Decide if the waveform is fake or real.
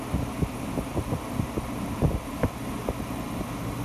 real